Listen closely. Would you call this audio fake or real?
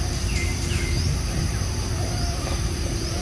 fake